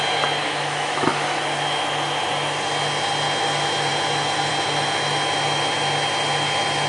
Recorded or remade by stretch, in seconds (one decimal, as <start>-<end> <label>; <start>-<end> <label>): 0.0-0.4 recorded; 0.4-1.4 remade; 1.4-6.9 recorded